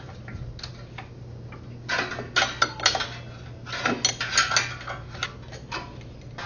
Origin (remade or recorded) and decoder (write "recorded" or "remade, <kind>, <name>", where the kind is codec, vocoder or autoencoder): recorded